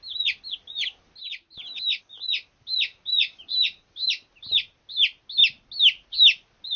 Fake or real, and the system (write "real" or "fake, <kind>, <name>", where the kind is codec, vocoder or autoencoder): real